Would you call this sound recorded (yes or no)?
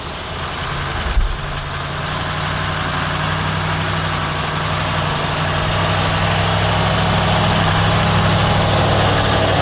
yes